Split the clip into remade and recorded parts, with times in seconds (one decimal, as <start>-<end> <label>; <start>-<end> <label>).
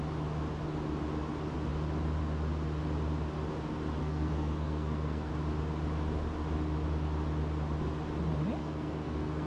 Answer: 0.0-4.0 recorded; 4.0-5.3 remade; 5.3-8.6 recorded; 8.6-9.5 remade